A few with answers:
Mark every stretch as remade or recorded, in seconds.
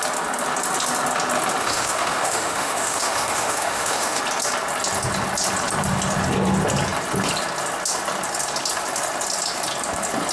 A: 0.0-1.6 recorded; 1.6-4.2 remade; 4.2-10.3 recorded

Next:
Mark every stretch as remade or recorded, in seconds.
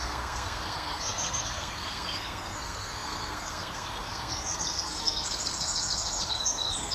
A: 0.0-6.9 remade